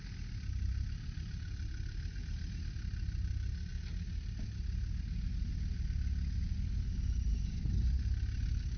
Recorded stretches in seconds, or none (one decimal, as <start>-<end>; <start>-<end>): 0.0-8.8